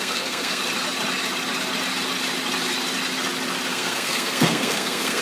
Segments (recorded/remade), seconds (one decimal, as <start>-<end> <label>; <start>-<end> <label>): 0.0-0.6 remade; 0.6-3.7 recorded; 3.7-5.2 remade